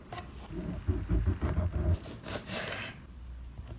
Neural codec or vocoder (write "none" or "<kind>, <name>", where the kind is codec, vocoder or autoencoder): none